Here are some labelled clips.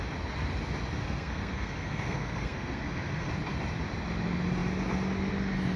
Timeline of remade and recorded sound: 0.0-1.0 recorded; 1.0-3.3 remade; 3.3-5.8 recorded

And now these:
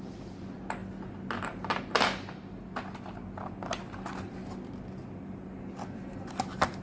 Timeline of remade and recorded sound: 0.0-6.8 recorded

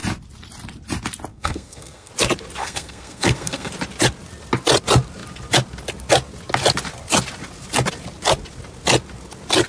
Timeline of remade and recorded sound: 0.0-1.3 recorded; 1.3-2.1 remade; 2.1-2.6 recorded; 2.6-3.7 remade; 3.7-9.7 recorded

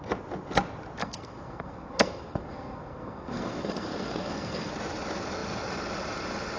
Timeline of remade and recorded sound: 0.0-1.0 recorded; 1.0-4.7 remade; 4.7-6.6 recorded

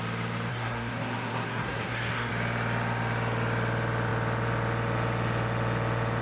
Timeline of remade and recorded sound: 0.0-0.5 recorded; 0.5-2.3 remade; 2.3-6.2 recorded

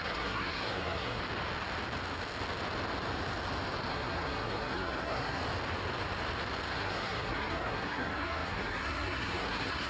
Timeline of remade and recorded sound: 0.0-1.2 remade; 1.2-3.9 recorded; 3.9-5.4 remade; 5.4-6.7 recorded; 6.7-9.9 remade

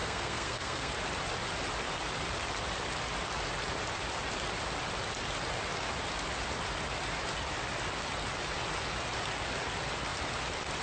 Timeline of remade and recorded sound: 0.0-0.9 remade; 0.9-10.8 recorded

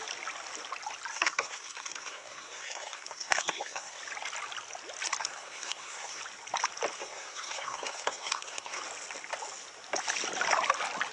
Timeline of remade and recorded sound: 0.0-1.1 recorded; 1.1-4.0 remade; 4.0-5.2 recorded; 5.2-6.2 remade; 6.2-7.0 recorded; 7.0-8.8 remade; 8.8-11.1 recorded